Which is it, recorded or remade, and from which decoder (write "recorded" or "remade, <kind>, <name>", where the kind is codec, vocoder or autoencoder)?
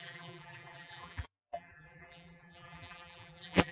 remade, vocoder, BigVGAN v2